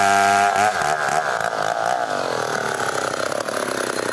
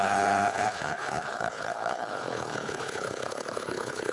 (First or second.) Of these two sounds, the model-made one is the second